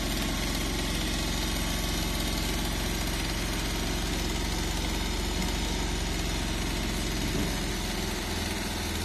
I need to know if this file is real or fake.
real